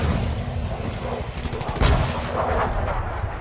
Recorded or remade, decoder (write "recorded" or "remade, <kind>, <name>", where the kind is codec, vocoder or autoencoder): recorded